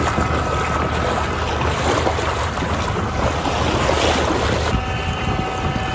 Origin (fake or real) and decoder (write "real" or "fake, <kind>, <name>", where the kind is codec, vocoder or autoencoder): real